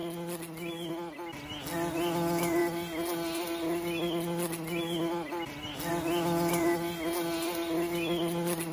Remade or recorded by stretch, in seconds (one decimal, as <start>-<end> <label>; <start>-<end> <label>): 0.0-8.7 recorded